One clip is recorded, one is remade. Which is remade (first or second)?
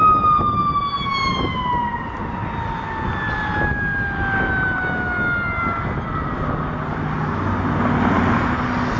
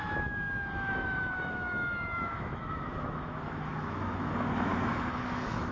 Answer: second